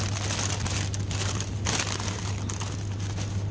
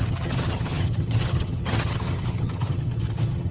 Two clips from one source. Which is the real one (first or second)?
first